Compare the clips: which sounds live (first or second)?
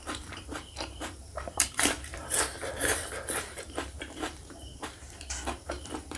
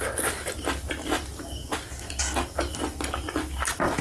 second